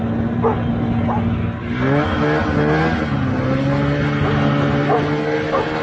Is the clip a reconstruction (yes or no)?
no